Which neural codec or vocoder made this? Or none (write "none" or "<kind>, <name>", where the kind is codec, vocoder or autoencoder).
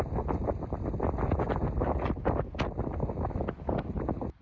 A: none